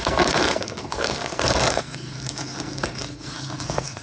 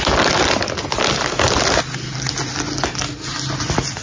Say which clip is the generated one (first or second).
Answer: first